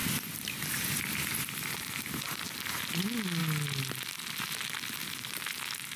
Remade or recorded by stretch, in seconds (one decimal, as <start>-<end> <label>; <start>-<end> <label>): 0.0-6.0 recorded